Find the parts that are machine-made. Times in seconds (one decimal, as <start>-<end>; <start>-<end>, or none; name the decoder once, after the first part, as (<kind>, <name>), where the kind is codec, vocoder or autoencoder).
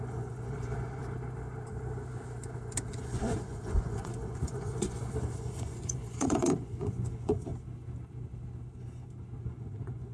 0.0-1.0 (vocoder, Vocos); 2.9-7.5; 9.4-10.1